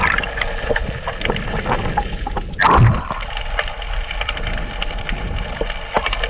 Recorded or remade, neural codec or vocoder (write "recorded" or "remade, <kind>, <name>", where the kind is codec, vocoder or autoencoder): recorded